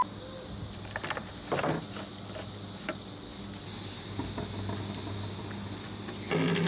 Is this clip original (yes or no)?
yes